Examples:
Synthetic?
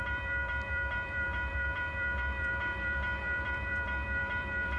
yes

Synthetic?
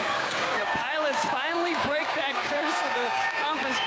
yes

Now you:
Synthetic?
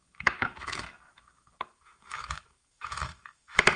yes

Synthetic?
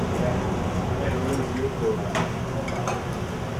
no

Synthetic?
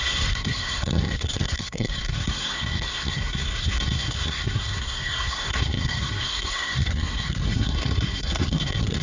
yes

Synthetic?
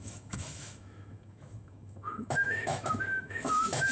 yes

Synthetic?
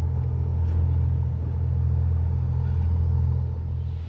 no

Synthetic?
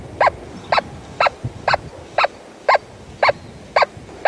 no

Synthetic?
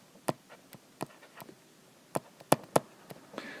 no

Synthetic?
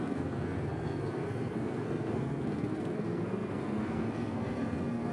yes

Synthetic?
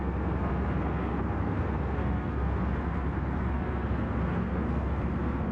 yes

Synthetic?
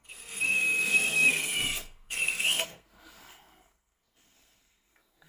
yes